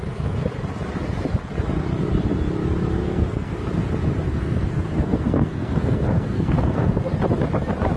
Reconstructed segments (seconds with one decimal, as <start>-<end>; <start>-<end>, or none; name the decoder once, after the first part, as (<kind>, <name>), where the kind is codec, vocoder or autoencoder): 3.0-3.8 (codec, SNAC); 4.3-7.1